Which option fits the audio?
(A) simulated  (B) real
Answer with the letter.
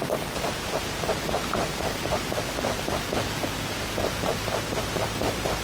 A